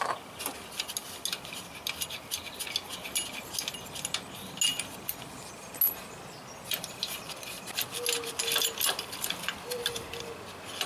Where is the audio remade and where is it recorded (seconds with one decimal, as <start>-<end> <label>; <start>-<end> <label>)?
0.0-10.9 recorded